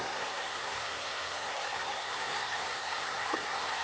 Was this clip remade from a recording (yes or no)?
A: yes